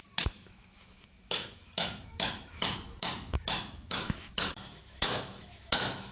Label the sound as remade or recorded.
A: remade